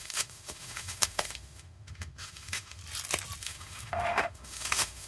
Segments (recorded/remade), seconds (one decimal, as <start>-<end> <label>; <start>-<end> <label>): 0.0-2.8 remade; 2.8-3.4 recorded; 3.4-5.1 remade